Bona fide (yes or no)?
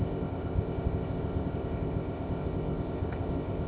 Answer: no